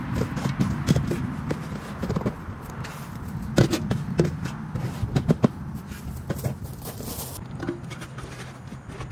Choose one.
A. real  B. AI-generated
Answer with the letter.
A